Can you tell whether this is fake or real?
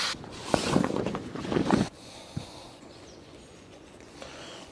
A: fake